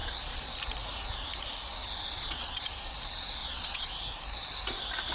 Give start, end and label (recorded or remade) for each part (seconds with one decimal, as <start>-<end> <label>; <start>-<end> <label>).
0.0-0.5 remade; 0.5-1.8 recorded; 1.8-2.7 remade; 2.7-3.4 recorded; 3.4-3.9 remade; 3.9-5.1 recorded